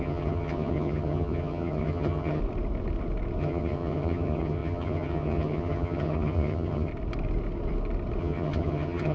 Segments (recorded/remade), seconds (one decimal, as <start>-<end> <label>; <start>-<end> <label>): 0.0-2.4 remade; 2.4-3.4 recorded; 3.4-6.9 remade; 6.9-8.2 recorded; 8.2-9.1 remade

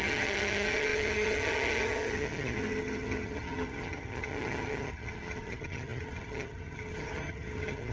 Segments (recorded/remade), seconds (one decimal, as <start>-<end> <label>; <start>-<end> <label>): 0.0-7.9 remade

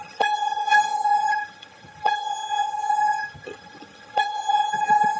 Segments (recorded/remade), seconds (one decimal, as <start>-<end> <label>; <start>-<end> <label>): 0.0-5.2 remade

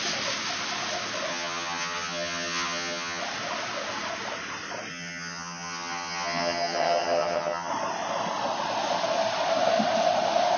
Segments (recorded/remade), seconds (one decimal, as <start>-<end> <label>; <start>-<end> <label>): 0.0-1.3 recorded; 1.3-3.2 remade; 3.2-4.9 recorded; 4.9-7.7 remade; 7.7-10.6 recorded

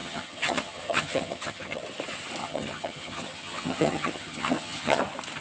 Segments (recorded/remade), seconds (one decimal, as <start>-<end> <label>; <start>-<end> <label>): 0.0-1.8 remade; 1.8-2.4 recorded; 2.4-5.0 remade; 5.0-5.4 recorded

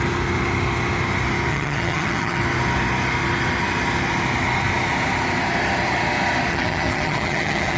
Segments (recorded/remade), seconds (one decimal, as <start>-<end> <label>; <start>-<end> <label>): 0.0-1.5 recorded; 1.5-2.4 remade; 2.4-6.5 recorded; 6.5-7.8 remade

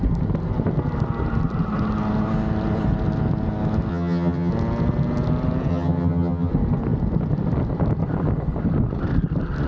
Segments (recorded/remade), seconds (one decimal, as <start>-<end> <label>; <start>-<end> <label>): 0.0-3.9 recorded; 3.9-4.5 remade; 4.5-5.7 recorded; 5.7-6.5 remade; 6.5-9.7 recorded